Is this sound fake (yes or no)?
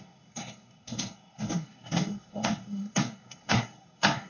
yes